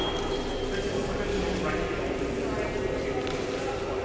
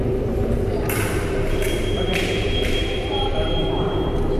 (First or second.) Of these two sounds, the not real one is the second